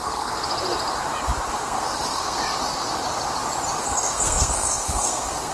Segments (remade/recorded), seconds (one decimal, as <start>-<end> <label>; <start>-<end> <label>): 0.0-0.4 remade; 0.4-1.5 recorded; 1.5-2.4 remade; 2.4-3.8 recorded; 3.8-5.5 remade